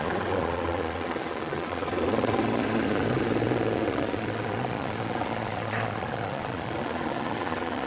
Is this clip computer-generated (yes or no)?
yes